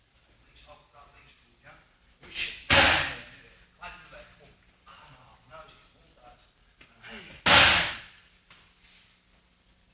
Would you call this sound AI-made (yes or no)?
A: no